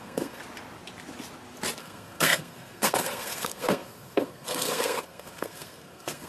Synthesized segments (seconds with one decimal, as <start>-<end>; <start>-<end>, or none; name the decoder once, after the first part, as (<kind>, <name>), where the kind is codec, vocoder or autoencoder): 0.0-0.4 (codec, SNAC); 1.8-6.3